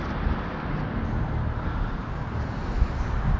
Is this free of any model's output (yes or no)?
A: yes